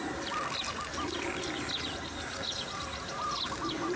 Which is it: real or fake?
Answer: real